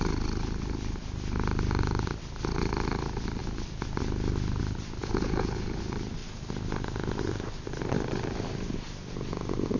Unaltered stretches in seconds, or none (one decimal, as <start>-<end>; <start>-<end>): 0.0-5.0; 5.8-9.8